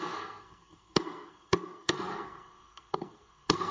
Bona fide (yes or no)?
no